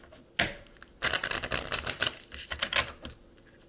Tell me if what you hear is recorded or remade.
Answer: recorded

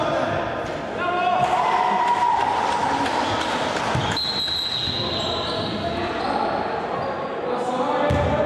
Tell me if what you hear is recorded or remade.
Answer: recorded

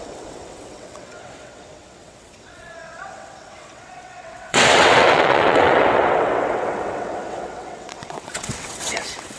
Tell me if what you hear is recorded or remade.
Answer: remade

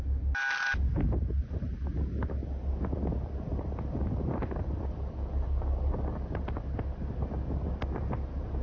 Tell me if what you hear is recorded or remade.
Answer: recorded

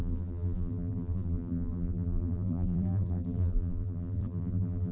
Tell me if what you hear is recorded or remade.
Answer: remade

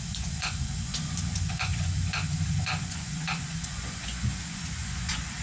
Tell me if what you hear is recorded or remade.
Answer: remade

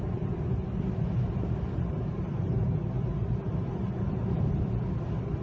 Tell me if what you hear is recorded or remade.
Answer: recorded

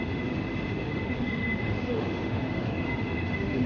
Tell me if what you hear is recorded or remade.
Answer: remade